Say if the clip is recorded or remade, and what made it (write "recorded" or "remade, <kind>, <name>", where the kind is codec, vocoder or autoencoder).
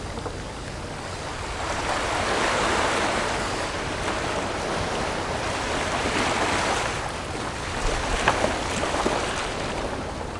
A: recorded